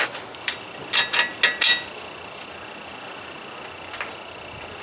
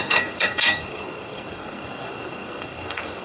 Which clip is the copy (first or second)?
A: second